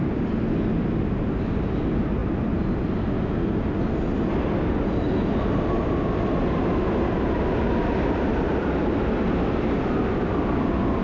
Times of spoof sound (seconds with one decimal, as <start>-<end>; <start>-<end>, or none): none